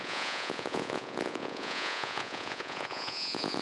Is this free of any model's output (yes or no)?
no